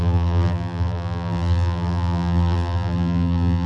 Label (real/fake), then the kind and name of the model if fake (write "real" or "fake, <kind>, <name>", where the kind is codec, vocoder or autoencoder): fake, vocoder, BigVGAN v2